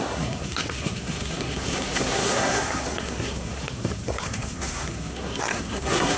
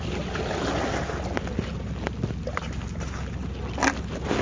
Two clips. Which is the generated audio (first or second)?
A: first